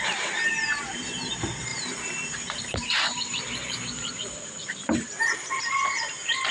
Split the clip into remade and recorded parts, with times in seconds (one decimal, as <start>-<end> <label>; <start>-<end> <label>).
0.0-1.7 recorded; 1.7-5.6 remade; 5.6-6.5 recorded